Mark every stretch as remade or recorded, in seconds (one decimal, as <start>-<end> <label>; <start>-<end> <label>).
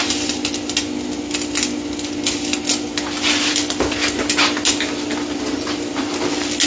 0.0-6.7 recorded